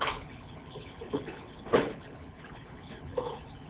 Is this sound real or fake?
fake